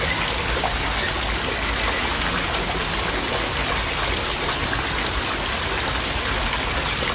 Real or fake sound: real